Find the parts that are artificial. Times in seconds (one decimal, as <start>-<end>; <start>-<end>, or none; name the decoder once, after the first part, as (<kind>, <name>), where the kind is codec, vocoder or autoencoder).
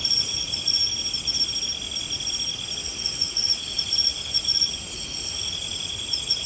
0.0-0.8 (vocoder, Vocos); 2.8-6.5